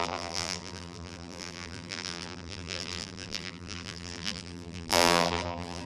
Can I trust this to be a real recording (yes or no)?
no